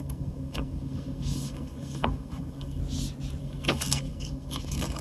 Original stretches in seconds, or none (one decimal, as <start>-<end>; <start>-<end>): 2.8-3.4